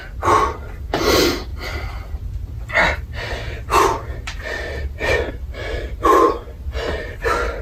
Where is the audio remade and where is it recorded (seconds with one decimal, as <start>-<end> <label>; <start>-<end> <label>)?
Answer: 0.0-7.6 recorded